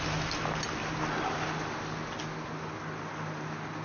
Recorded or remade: recorded